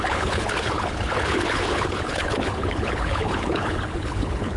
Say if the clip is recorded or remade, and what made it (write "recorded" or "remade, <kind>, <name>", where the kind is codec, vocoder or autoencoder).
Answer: remade, codec, HILCodec